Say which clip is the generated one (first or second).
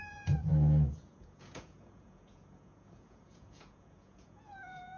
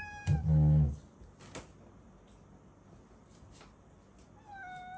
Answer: first